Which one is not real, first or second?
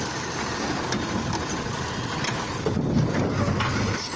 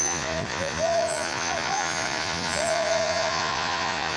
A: second